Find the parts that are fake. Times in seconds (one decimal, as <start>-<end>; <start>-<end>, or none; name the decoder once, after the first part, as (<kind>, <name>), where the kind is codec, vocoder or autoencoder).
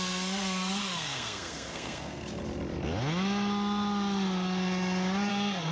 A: 0.0-2.2 (codec, SNAC); 5.3-5.7